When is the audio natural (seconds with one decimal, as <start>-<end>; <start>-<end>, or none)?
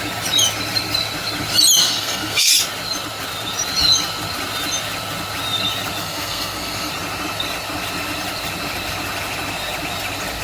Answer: 0.0-1.8; 2.5-6.0; 6.9-10.4